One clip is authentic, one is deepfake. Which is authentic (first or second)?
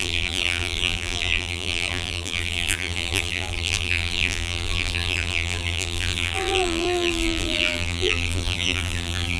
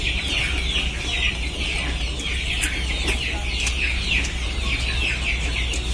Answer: second